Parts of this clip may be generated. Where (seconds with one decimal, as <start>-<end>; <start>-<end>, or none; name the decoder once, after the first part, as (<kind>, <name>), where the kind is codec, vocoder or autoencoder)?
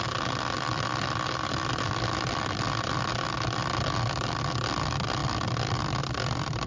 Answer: 5.2-6.7 (vocoder, BigVGAN v2)